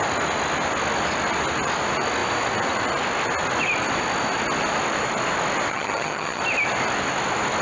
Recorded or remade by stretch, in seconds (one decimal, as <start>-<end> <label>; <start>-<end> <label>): 0.0-5.7 recorded; 5.7-6.4 remade; 6.4-7.6 recorded